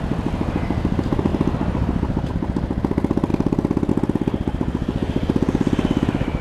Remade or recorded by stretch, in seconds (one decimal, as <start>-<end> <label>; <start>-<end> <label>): 0.0-3.3 recorded; 3.3-3.9 remade; 3.9-6.4 recorded